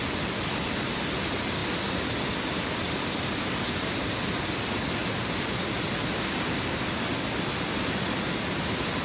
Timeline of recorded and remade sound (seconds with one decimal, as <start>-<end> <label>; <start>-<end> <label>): 0.0-9.0 recorded